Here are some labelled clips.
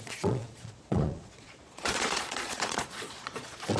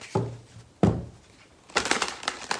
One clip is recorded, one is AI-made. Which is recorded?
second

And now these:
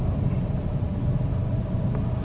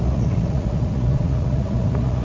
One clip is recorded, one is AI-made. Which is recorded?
first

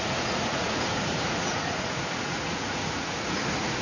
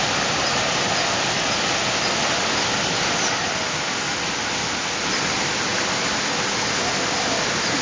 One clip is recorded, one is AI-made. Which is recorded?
second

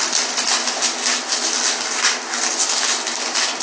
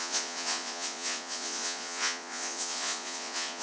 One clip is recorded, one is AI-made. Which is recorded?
first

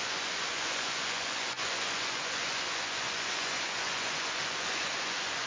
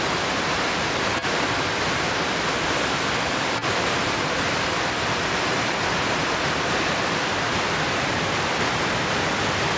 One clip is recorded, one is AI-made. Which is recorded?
second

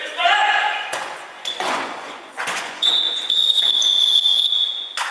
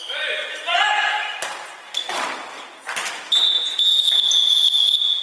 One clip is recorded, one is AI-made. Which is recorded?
second